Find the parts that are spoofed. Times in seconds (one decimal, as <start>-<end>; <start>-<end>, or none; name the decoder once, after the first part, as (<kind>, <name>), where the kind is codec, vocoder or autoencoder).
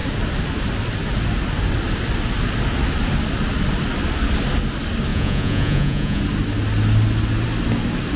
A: 5.1-6.2 (vocoder, Vocos)